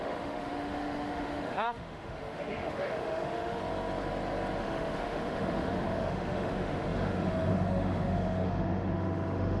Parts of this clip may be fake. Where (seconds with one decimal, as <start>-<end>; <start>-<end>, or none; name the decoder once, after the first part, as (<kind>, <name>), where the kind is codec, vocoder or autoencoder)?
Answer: 0.0-3.6 (autoencoder, DAC-VAE); 4.6-9.6